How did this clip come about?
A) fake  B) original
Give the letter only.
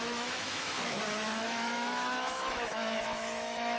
A